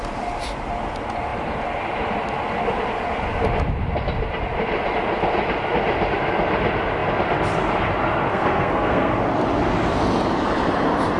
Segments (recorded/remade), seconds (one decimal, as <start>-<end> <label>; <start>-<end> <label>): 0.0-8.3 recorded; 8.3-9.1 remade; 9.1-11.2 recorded